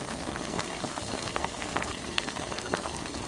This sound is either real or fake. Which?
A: fake